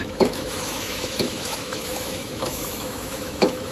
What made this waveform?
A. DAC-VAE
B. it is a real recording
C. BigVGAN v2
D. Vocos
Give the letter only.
A